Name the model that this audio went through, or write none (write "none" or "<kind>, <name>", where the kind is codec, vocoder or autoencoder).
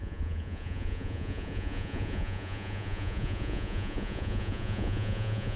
vocoder, Vocos